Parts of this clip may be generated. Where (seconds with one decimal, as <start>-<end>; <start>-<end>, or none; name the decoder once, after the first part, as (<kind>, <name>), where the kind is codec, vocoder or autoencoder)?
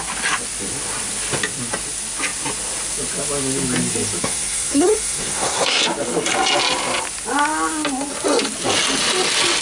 4.2-5.8 (codec, SNAC)